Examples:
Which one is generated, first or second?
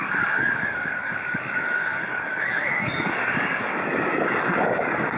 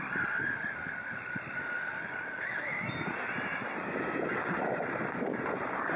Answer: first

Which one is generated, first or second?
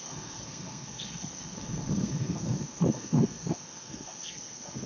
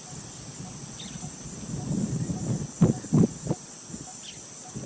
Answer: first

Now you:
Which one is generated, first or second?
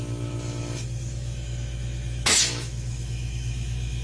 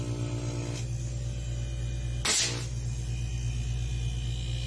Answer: first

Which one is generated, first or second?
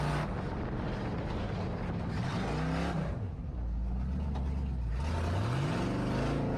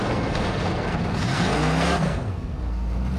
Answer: second